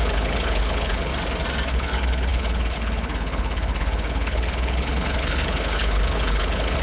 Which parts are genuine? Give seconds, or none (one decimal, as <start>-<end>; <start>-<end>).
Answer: 1.1-1.7